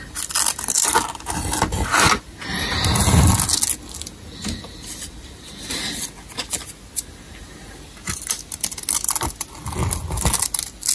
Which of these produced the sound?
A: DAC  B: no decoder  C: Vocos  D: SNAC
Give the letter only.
B